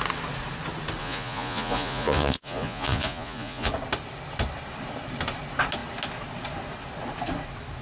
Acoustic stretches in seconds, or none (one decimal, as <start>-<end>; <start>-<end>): 0.0-1.0; 3.7-7.8